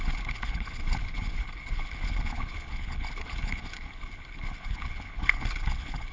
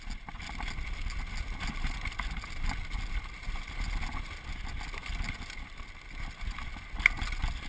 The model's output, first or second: first